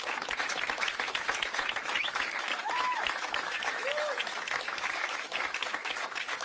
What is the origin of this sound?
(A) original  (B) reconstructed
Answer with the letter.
B